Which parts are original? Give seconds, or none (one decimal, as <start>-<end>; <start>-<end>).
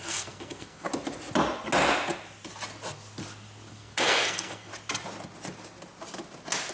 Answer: 0.9-3.7; 4.7-6.7